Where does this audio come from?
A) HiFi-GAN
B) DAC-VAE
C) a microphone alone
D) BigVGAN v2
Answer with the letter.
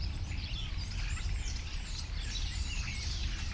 C